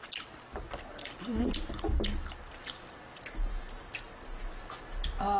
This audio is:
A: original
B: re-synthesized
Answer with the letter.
A